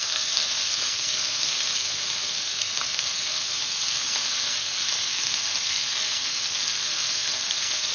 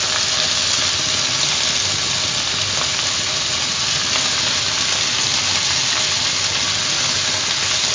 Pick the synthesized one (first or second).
first